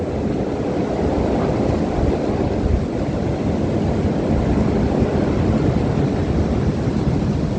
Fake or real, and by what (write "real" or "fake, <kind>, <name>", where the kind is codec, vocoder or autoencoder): real